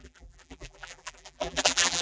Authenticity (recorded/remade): remade